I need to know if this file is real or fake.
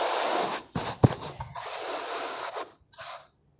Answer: fake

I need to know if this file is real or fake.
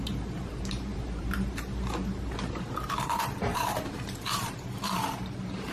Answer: fake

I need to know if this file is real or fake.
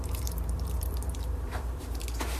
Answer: fake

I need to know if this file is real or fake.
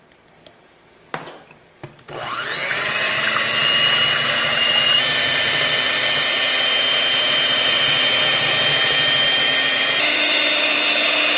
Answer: real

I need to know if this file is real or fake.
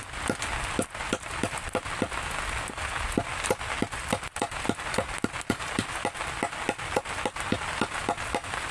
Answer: real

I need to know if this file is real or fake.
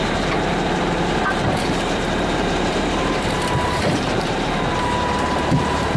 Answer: fake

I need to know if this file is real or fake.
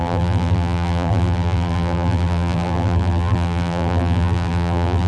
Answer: fake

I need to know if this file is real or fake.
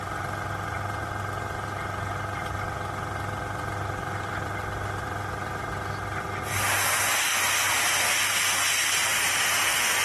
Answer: real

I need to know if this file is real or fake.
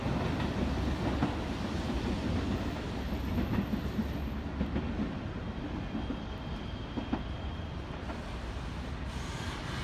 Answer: real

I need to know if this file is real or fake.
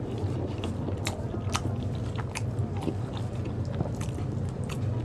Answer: real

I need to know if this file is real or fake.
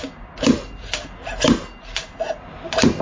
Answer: real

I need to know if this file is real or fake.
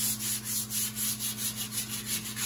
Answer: real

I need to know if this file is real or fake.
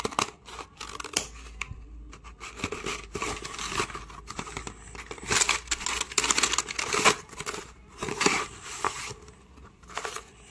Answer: real